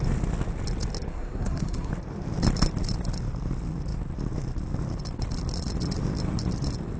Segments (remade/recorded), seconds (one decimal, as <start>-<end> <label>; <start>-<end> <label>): 0.0-1.1 recorded; 1.1-1.9 remade; 1.9-7.0 recorded